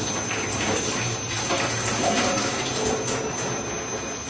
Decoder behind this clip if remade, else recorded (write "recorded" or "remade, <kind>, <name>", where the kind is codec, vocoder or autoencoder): recorded